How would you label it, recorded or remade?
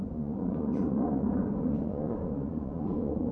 remade